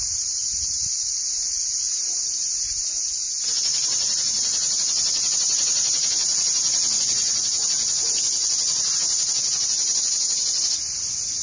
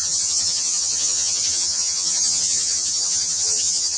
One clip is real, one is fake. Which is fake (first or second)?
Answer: second